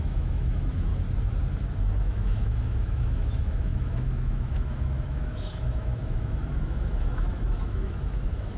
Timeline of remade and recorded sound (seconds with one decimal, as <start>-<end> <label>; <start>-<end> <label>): 0.0-0.9 remade; 0.9-2.0 recorded; 2.0-8.6 remade